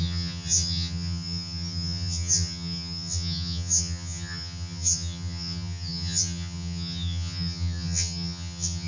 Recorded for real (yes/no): no